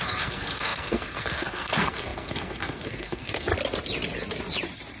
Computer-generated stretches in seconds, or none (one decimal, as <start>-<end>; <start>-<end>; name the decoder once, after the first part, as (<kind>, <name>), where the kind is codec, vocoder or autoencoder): 0.0-3.5 (codec, SNAC)